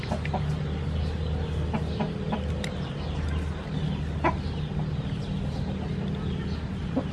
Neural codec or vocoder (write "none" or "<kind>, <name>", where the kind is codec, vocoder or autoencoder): none